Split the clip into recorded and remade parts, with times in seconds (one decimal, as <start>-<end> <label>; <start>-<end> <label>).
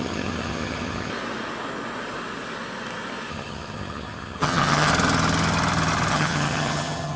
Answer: 0.0-1.1 remade; 1.1-3.3 recorded; 3.3-4.9 remade; 4.9-6.1 recorded; 6.1-7.2 remade